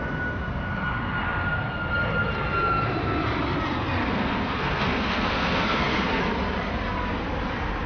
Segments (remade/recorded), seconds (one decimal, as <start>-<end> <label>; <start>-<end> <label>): 0.0-4.0 recorded; 4.0-6.2 remade; 6.2-7.9 recorded